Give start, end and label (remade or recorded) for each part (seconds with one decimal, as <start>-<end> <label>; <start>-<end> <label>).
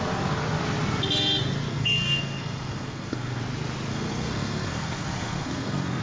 0.0-1.7 recorded; 1.7-3.4 remade; 3.4-3.9 recorded; 3.9-6.0 remade